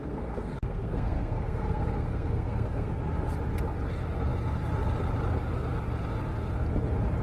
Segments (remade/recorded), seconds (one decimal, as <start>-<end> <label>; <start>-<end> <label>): 0.0-2.9 remade; 2.9-7.2 recorded